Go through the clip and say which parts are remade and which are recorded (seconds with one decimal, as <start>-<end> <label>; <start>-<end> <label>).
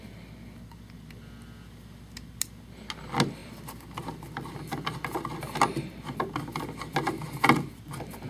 0.0-8.3 recorded